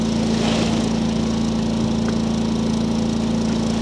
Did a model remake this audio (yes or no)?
no